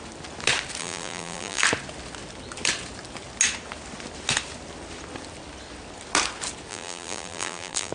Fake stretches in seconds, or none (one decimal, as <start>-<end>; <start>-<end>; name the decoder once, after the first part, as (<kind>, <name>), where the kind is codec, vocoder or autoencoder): 0.8-1.6 (vocoder, BigVGAN v2); 6.7-7.9